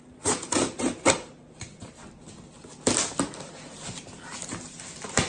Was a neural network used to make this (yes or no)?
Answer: no